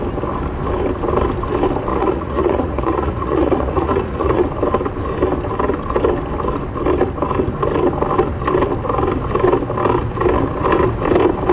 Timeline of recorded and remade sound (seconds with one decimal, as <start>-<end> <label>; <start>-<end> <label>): 0.0-1.9 recorded; 1.9-4.4 remade; 4.4-11.5 recorded